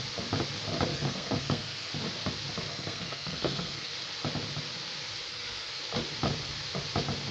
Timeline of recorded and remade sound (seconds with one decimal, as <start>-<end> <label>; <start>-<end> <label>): 0.0-0.9 recorded; 0.9-1.9 remade; 1.9-2.7 recorded; 2.7-3.9 remade; 3.9-5.3 recorded; 5.3-5.8 remade; 5.8-7.3 recorded